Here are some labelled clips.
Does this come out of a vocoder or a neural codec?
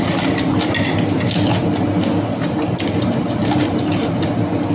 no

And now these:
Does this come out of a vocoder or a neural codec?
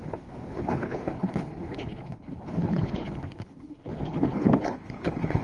yes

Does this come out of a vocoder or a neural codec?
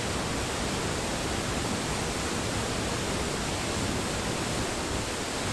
no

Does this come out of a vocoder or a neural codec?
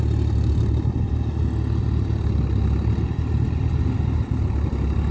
no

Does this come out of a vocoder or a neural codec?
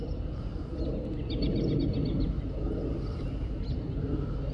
no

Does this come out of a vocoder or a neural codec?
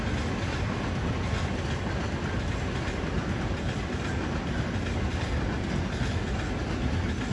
no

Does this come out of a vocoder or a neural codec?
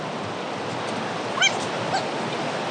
no